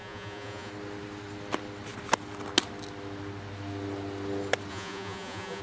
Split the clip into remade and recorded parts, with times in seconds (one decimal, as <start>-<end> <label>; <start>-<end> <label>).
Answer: 0.0-0.7 remade; 0.7-4.7 recorded; 4.7-5.6 remade